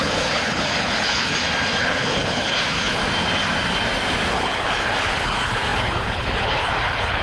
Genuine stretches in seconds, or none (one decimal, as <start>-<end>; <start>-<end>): 1.3-1.8; 3.0-4.3